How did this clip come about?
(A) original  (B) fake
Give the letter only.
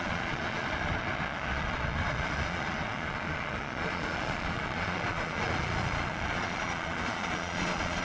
B